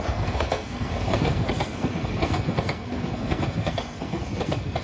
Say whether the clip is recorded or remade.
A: remade